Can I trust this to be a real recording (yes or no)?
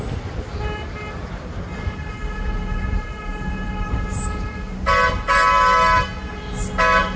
yes